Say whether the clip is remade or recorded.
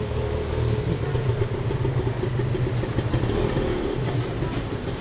recorded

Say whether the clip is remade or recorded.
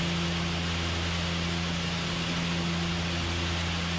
recorded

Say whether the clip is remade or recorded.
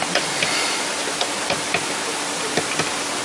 recorded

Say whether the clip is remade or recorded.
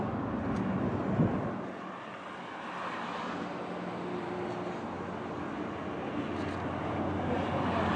recorded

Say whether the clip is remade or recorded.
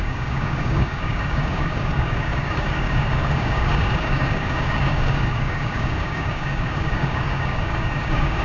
remade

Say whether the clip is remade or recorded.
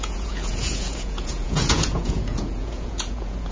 remade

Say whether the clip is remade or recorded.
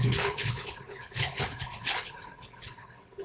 remade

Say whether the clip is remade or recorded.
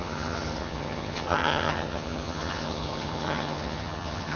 remade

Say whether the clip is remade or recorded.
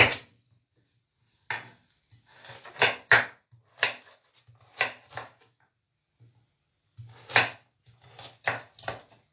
recorded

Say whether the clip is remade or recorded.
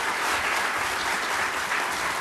remade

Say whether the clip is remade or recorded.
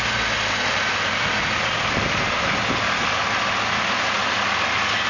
recorded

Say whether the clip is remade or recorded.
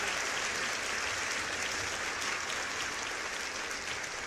recorded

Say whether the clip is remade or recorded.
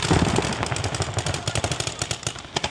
recorded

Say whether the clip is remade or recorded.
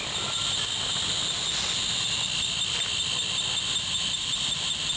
recorded